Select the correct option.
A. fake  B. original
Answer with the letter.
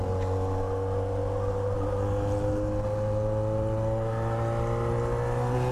B